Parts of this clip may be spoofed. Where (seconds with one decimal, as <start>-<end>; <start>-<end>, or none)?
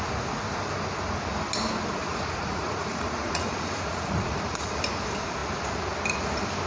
2.0-4.8